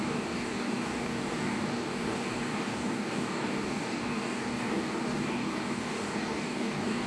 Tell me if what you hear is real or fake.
fake